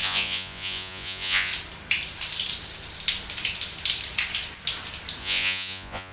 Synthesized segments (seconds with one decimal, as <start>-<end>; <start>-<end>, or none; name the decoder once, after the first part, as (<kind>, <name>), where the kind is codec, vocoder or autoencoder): 0.0-1.5 (vocoder, Vocos); 5.2-6.1